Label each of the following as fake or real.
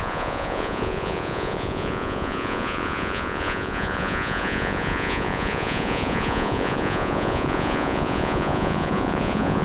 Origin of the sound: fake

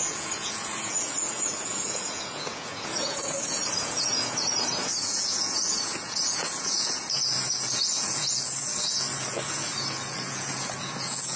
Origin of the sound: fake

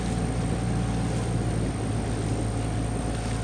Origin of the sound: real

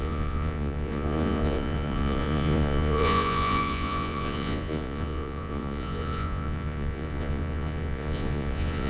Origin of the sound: fake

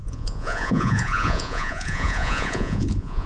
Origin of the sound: fake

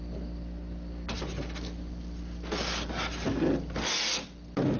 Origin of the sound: real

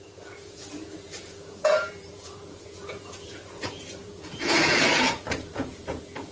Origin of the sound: fake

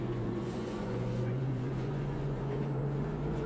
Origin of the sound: fake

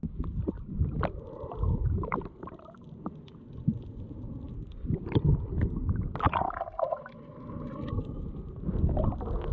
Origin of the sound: real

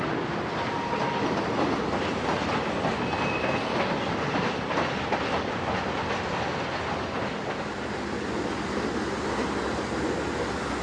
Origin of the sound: real